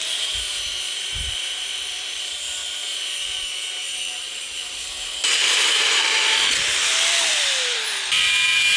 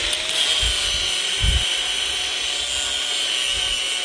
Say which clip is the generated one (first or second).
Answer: first